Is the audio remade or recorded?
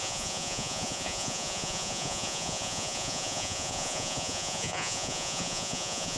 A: remade